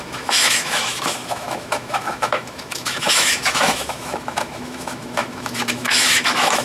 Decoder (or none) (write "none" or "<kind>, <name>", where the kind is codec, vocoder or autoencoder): autoencoder, DAC-VAE